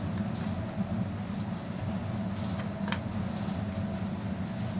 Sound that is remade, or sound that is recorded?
recorded